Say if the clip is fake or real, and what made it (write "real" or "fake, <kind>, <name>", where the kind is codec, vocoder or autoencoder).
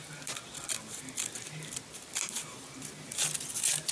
real